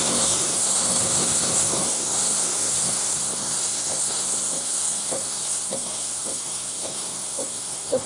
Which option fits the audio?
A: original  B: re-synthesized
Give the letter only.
B